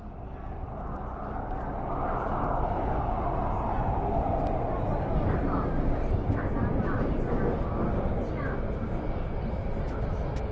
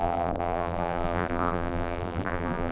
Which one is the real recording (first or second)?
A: first